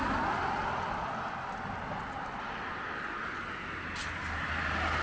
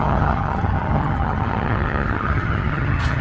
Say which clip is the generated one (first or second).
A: second